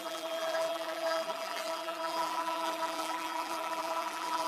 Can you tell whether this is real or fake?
fake